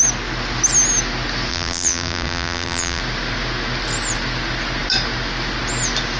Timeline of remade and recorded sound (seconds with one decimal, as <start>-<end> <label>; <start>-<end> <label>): 0.0-1.5 recorded; 1.5-3.0 remade; 3.0-6.2 recorded